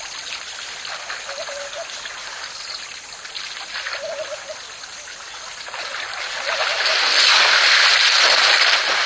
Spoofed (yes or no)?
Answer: no